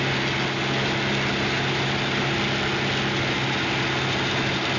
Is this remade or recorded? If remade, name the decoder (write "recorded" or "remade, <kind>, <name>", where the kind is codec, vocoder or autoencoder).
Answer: recorded